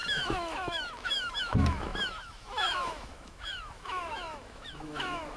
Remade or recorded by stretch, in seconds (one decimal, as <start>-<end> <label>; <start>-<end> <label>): 0.0-5.4 remade